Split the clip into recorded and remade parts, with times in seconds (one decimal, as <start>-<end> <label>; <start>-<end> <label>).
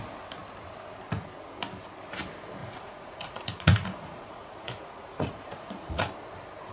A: 0.0-2.6 recorded; 2.6-6.1 remade; 6.1-6.7 recorded